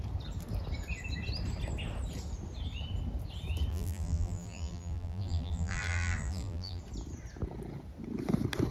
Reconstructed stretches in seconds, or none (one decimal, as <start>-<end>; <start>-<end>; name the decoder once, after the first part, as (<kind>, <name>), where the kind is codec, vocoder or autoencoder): 3.7-6.8 (vocoder, BigVGAN v2)